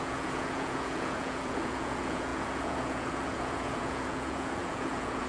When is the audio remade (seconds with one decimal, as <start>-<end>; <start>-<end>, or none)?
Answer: 0.0-5.3